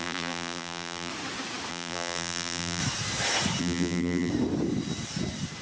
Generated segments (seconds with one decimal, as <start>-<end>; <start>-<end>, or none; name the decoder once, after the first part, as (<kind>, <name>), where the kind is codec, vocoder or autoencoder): 0.0-1.1 (vocoder, BigVGAN v2); 1.7-2.8; 3.6-4.3